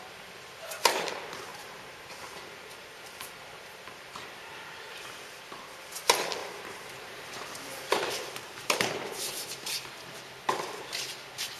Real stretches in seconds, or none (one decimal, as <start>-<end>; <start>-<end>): 0.0-1.5; 5.6-6.4; 9.9-11.6